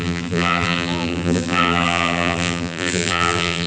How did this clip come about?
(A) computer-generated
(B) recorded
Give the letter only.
A